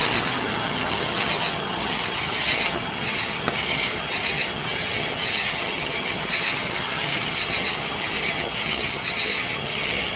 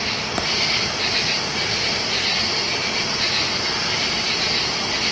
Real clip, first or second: second